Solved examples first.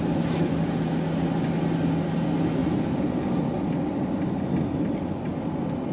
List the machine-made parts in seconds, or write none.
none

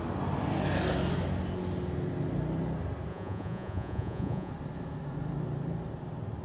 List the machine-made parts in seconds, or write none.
3.1-4.5 (vocoder, Vocos)

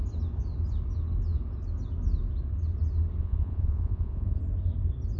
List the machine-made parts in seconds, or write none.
3.2-4.4 (vocoder, Vocos)

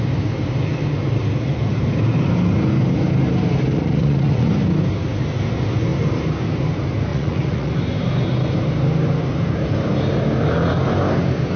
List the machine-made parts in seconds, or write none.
3.7-4.5 (vocoder, Vocos); 7.1-7.7

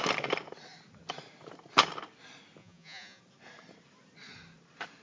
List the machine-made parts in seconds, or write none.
2.6-3.2 (vocoder, Vocos)